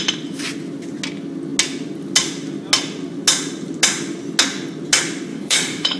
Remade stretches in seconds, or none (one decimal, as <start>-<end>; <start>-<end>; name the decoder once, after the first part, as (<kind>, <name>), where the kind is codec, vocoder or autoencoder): 5.3-6.0 (codec, DAC)